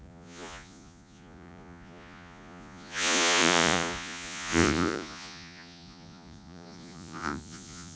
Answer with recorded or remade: remade